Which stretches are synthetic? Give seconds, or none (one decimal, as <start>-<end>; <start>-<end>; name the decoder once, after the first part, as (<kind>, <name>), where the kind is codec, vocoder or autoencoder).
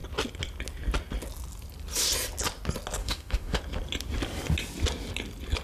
3.0-3.6 (autoencoder, DAC-VAE)